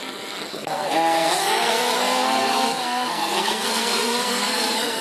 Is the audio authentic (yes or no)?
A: no